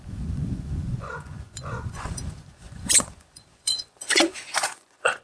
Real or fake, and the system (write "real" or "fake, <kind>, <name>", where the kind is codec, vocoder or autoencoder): fake, vocoder, Vocos